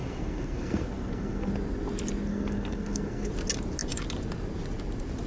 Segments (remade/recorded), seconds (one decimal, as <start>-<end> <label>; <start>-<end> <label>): 0.0-1.5 remade; 1.5-2.3 recorded; 2.3-3.3 remade; 3.3-5.3 recorded